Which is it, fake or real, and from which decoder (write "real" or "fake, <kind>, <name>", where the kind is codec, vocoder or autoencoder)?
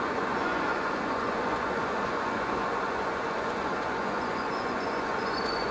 fake, vocoder, Vocos